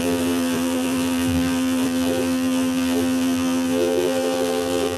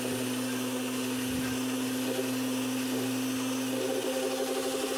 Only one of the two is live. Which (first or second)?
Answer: second